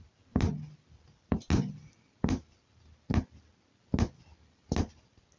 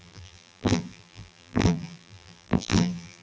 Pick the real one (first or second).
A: first